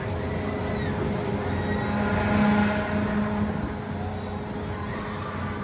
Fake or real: real